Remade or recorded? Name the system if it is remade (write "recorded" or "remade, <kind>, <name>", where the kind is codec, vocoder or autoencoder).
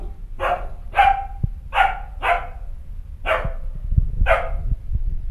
recorded